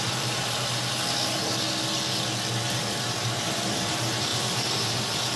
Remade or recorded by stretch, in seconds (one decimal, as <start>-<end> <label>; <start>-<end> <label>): 0.0-0.9 remade; 0.9-2.8 recorded; 2.8-5.4 remade